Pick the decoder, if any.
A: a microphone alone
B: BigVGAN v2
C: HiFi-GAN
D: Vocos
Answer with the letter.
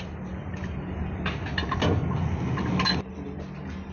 A